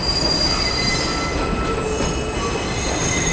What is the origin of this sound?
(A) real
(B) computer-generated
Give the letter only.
A